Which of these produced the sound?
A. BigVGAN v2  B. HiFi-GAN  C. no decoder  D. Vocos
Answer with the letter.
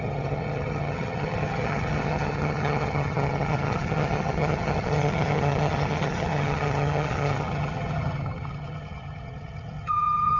B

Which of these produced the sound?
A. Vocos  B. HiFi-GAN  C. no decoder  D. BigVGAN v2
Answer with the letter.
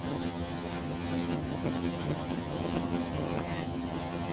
B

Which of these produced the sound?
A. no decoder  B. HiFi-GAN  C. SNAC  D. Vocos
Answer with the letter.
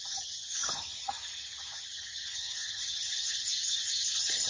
B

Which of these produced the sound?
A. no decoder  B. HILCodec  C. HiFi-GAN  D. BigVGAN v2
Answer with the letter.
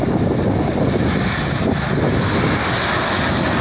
A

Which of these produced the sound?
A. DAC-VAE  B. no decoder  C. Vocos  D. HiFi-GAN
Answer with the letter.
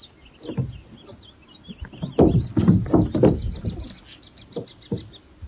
B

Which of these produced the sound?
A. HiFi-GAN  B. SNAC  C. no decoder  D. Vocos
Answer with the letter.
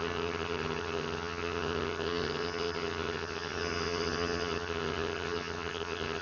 A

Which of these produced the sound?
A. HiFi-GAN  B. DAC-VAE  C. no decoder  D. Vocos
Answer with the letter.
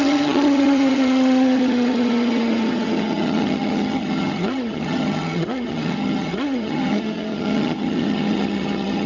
A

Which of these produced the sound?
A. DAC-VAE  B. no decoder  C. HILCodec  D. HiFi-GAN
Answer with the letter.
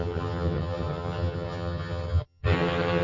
D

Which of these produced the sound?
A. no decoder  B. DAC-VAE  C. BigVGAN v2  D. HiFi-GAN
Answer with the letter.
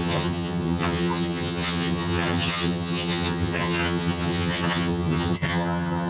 D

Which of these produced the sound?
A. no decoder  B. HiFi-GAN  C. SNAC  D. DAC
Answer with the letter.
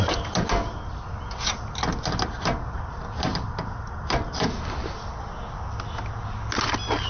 A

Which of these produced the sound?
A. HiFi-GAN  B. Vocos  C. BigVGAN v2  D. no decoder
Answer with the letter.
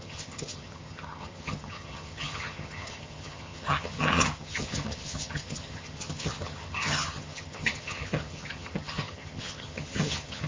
A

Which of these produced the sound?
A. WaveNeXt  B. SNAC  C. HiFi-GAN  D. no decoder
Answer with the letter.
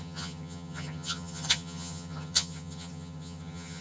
C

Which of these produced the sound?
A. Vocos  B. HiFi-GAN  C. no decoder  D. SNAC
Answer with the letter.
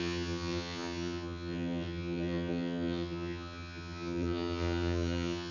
B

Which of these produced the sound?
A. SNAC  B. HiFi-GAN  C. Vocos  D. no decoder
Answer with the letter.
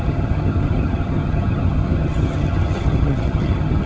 B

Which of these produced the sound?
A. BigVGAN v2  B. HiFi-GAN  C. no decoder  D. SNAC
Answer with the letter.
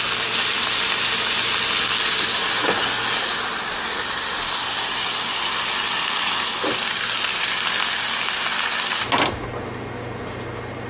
C